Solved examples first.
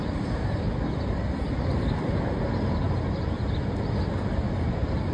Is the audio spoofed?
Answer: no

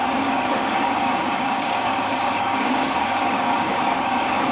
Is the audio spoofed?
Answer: yes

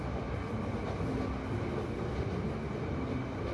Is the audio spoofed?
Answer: no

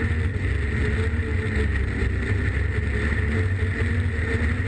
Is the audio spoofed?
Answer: no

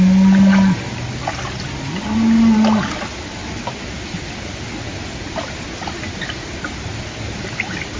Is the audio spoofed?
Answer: no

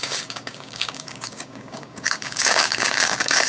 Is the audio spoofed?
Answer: yes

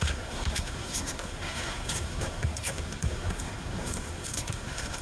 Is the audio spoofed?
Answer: yes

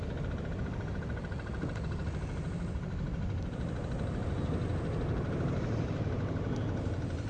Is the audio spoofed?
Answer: no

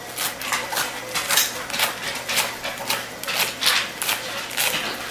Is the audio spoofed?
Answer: no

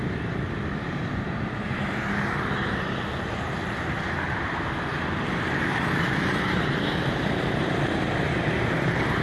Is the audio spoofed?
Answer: yes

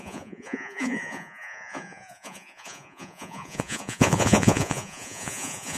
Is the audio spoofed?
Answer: yes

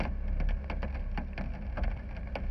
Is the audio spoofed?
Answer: no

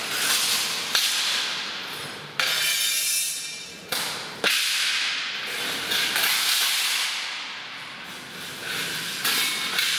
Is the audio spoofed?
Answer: no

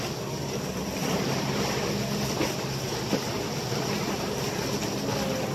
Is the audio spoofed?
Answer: no